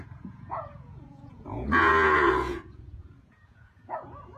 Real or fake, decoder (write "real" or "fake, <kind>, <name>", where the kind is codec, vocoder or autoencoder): fake, vocoder, Vocos